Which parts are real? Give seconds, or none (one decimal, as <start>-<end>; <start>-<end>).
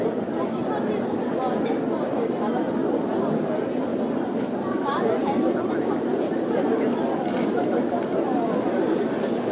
3.9-7.9